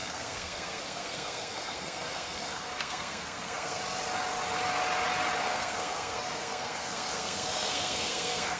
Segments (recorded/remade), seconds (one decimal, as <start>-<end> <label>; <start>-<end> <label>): 0.0-3.8 remade; 3.8-5.4 recorded; 5.4-8.6 remade